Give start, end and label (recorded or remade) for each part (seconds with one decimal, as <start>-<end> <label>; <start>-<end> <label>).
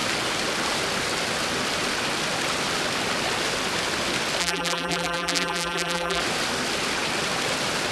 0.0-4.4 recorded; 4.4-6.2 remade; 6.2-7.9 recorded